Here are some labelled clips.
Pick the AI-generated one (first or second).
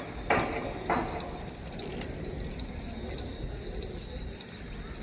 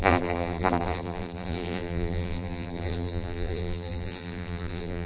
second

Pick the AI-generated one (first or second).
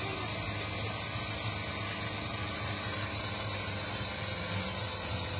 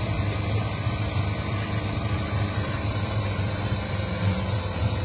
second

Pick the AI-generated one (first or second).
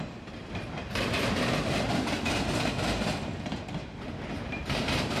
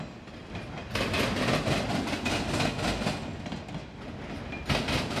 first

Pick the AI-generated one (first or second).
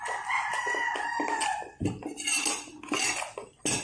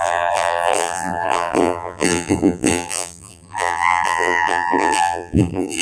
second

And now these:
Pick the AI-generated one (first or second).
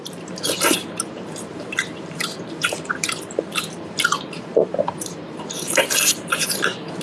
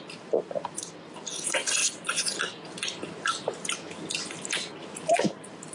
first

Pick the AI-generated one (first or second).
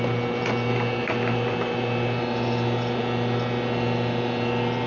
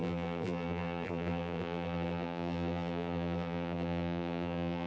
second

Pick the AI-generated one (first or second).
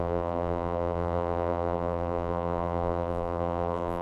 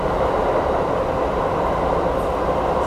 first